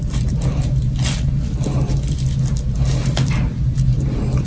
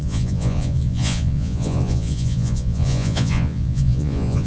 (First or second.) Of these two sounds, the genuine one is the first